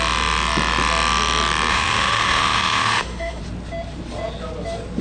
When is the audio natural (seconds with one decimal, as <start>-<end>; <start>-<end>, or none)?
0.0-1.7; 3.4-5.0